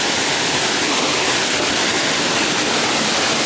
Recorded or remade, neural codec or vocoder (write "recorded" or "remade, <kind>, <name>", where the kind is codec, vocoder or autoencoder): recorded